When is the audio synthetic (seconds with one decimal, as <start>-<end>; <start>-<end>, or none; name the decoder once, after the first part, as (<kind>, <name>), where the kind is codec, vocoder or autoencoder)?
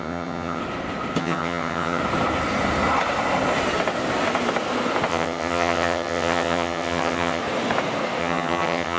0.0-0.6 (vocoder, HiFi-GAN); 1.2-2.0; 5.1-7.4; 8.2-9.0